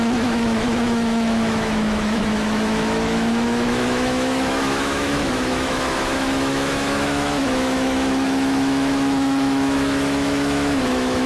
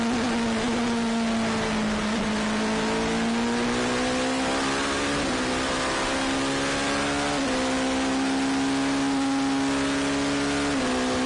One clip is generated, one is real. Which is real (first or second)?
second